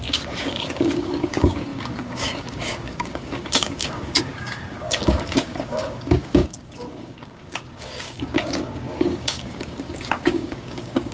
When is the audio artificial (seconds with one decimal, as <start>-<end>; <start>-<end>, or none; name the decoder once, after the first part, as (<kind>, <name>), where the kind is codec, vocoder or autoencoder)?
0.0-11.1 (codec, DAC)